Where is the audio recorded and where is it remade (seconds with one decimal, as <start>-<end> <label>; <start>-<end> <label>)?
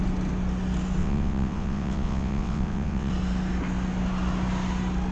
0.0-1.0 recorded; 1.0-3.1 remade; 3.1-5.1 recorded